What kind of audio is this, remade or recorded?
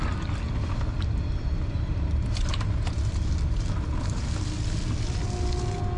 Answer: recorded